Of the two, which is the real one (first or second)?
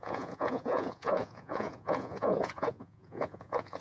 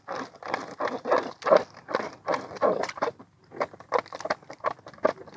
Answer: second